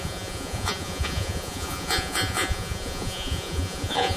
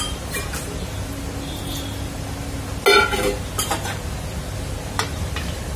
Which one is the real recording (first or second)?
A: second